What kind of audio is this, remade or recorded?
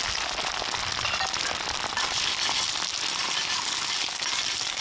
recorded